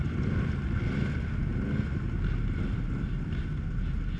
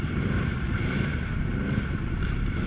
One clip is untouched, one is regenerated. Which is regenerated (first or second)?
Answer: second